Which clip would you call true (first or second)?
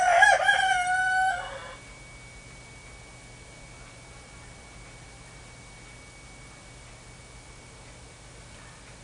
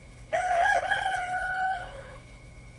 first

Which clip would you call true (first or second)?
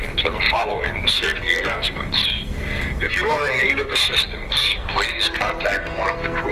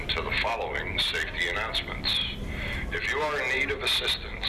second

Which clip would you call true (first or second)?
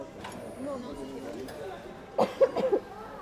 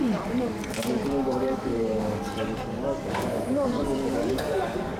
first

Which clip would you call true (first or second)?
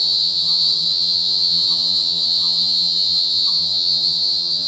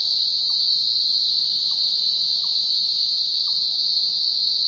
second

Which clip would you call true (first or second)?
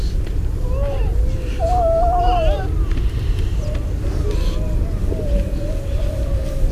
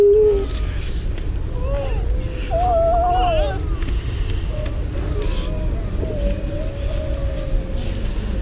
second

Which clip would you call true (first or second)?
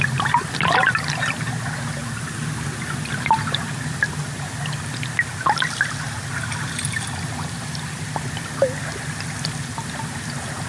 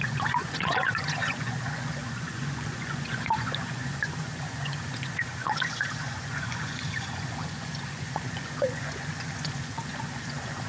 first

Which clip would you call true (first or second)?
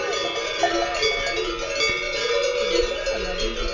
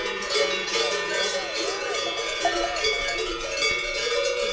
first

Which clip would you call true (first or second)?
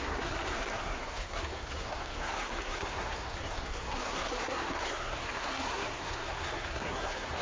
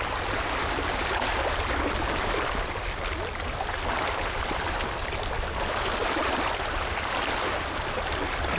second